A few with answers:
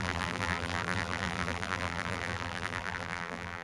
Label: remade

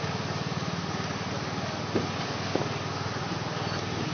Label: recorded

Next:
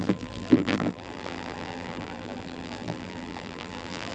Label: remade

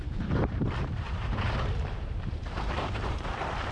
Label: remade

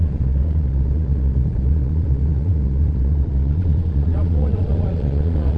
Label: remade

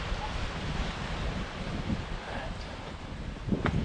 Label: recorded